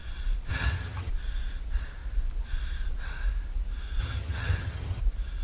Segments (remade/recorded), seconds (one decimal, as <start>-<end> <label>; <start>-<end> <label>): 0.0-0.5 recorded; 0.5-1.1 remade; 1.1-4.0 recorded; 4.0-5.0 remade; 5.0-5.4 recorded